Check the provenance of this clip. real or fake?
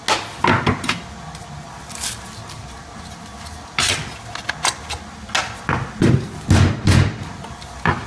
real